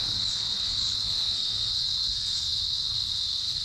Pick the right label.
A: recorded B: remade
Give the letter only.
B